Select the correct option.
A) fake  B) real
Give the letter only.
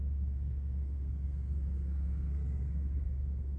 A